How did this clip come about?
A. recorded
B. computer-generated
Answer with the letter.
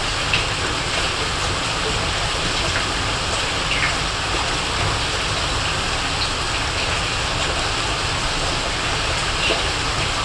A